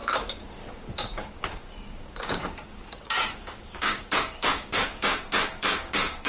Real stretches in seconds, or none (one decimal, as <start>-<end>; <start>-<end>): none